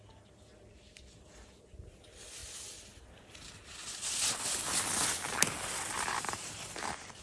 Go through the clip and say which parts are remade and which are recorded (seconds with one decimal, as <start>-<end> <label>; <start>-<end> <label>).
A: 0.0-7.2 recorded